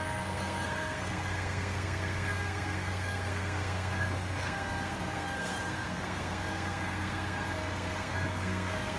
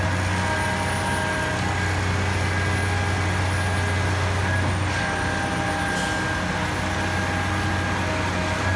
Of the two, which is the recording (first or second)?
second